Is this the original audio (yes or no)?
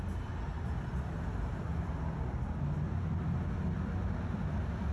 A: yes